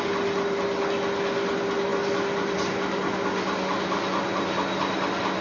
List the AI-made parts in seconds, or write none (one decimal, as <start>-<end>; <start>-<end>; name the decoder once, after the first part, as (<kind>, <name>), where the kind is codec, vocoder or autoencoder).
none